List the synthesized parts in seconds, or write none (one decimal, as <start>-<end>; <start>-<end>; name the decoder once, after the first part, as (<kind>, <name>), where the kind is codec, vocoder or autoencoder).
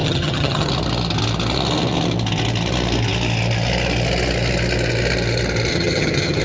0.0-0.7 (vocoder, HiFi-GAN); 5.7-6.4